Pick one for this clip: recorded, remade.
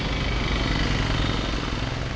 recorded